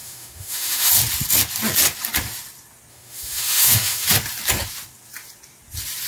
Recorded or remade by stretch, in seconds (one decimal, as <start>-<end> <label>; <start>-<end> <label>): 0.0-0.9 remade; 0.9-2.9 recorded; 2.9-4.1 remade; 4.1-6.1 recorded